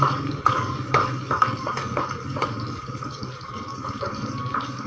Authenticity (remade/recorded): remade